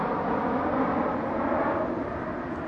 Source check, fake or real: real